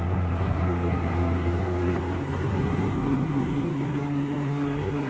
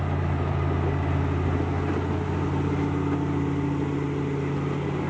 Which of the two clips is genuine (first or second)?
second